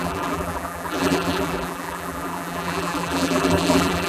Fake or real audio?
fake